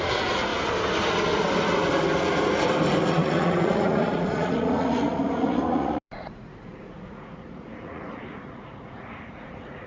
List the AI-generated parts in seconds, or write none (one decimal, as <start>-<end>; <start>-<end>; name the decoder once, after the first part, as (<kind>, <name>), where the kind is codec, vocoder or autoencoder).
0.0-0.5 (vocoder, Vocos); 3.1-9.9